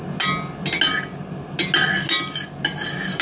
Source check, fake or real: real